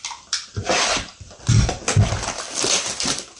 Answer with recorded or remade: remade